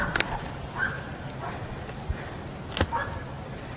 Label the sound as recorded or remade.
recorded